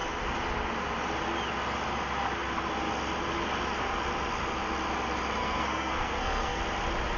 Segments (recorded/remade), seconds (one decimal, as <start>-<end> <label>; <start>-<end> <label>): 0.0-5.4 recorded; 5.4-6.6 remade; 6.6-7.2 recorded